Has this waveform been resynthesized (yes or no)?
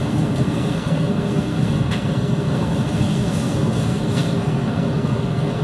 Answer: yes